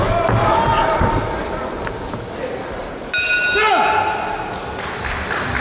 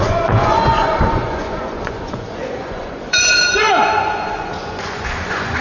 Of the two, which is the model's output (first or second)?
second